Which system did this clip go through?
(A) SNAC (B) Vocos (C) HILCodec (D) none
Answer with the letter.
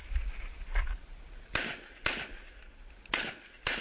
D